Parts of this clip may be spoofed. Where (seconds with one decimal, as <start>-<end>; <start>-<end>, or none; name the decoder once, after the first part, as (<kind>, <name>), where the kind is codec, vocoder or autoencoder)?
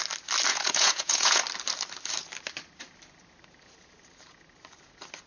0.5-1.4 (vocoder, Vocos)